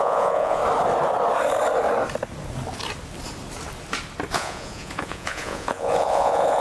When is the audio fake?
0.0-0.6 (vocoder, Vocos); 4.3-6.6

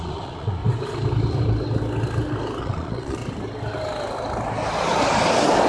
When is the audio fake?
0.0-0.6 (vocoder, Vocos); 2.6-3.2

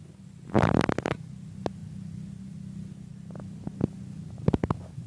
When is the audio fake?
1.8-2.4 (vocoder, BigVGAN v2); 3.1-3.7

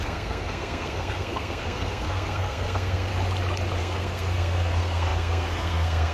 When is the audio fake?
0.0-3.1 (codec, SNAC); 3.8-6.1

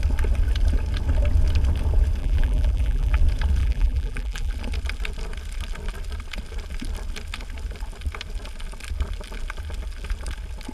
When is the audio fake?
2.2-3.2 (vocoder, BigVGAN v2); 3.6-4.5